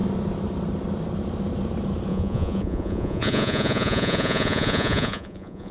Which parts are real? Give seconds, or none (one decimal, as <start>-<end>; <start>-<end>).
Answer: 0.0-2.1